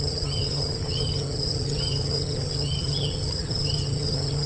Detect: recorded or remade remade